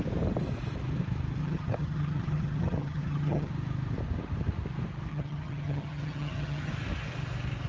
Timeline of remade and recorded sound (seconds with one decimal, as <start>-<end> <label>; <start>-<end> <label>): 0.0-1.4 recorded; 1.4-3.5 remade; 3.5-5.1 recorded; 5.1-6.7 remade; 6.7-7.7 recorded